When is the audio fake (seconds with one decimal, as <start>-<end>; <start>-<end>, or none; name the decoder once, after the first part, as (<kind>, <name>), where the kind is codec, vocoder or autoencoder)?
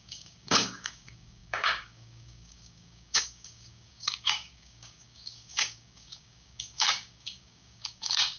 0.0-8.4 (codec, DAC)